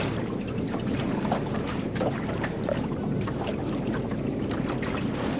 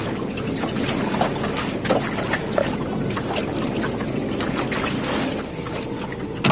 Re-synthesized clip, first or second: first